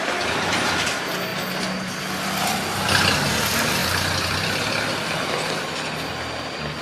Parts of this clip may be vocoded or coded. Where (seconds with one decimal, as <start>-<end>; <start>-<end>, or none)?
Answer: 3.8-5.5